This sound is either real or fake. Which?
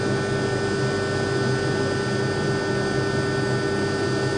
real